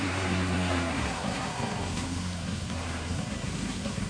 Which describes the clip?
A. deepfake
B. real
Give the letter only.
A